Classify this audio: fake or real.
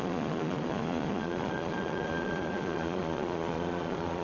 fake